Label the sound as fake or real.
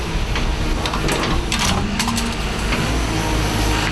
real